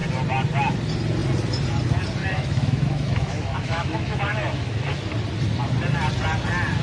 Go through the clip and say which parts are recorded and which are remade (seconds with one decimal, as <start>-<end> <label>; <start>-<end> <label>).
0.0-2.2 recorded; 2.2-5.1 remade; 5.1-6.8 recorded